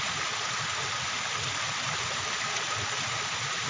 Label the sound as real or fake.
real